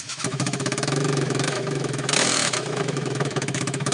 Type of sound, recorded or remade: remade